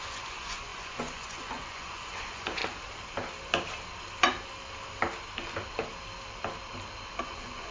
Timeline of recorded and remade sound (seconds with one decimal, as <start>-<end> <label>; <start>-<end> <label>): 0.0-2.6 remade; 2.6-7.2 recorded; 7.2-7.7 remade